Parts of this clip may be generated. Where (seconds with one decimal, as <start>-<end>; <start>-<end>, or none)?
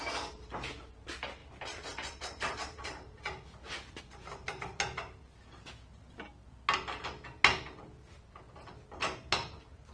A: none